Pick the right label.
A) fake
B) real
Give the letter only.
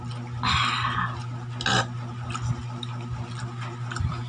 B